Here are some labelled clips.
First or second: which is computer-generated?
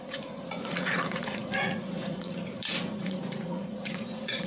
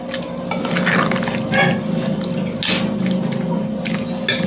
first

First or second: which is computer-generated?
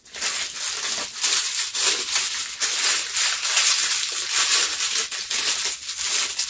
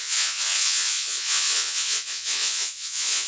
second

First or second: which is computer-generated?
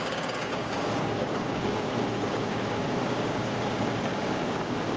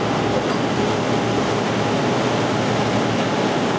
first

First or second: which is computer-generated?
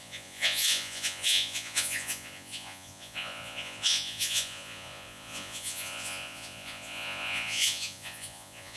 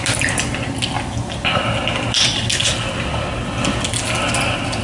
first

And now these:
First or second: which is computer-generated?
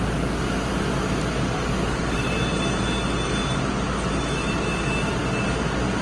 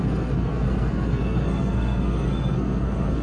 second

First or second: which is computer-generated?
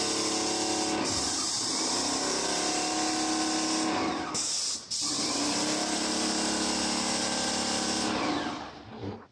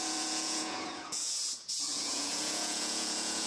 second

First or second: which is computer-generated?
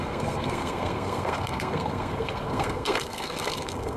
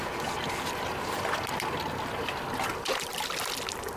first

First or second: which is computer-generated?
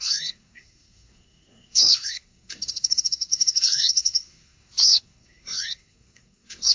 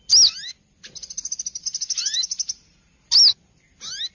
first